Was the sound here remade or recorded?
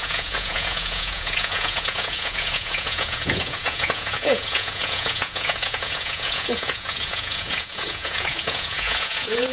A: remade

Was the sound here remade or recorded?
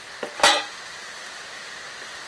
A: recorded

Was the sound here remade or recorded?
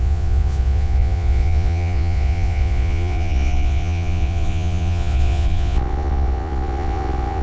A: remade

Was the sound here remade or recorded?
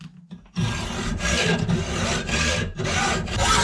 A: recorded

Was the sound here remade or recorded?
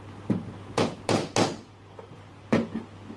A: recorded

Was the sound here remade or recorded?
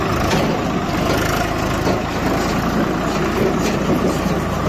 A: recorded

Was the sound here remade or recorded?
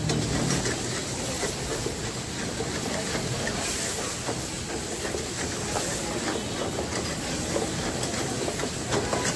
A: recorded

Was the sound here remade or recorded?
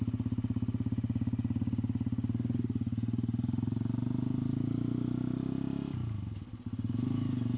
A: recorded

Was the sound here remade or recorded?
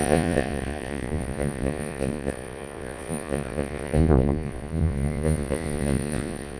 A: remade